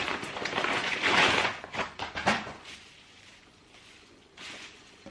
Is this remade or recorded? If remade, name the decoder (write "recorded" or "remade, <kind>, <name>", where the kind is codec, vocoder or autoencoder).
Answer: remade, vocoder, Vocos